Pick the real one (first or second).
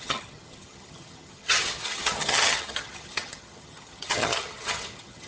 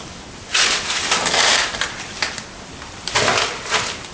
second